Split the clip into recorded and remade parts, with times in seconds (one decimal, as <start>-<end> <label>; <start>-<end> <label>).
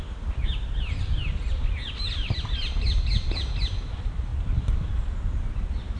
0.0-2.6 remade; 2.6-3.1 recorded; 3.1-6.0 remade